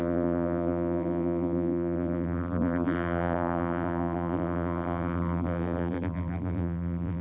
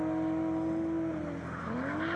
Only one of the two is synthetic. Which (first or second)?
first